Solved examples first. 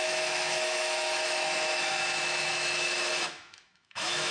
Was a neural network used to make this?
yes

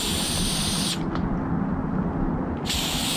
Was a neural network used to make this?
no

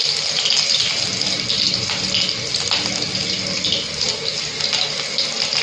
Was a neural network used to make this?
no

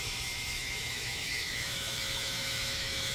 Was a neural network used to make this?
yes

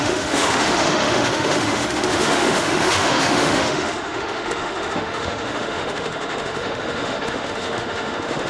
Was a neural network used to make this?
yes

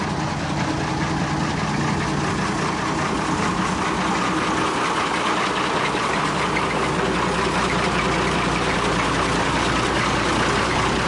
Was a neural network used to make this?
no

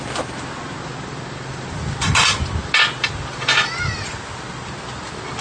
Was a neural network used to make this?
no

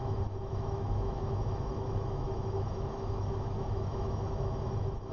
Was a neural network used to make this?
yes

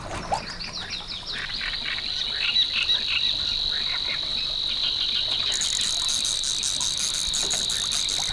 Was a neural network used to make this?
no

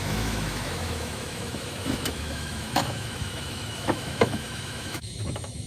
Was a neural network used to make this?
yes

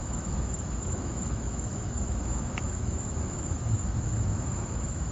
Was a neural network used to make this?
yes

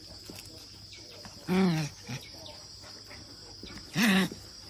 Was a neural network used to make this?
no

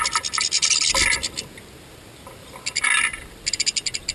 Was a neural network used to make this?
no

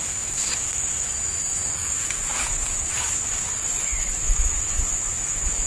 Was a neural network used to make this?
yes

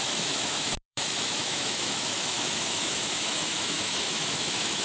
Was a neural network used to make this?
yes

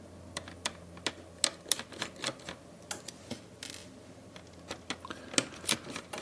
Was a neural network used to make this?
no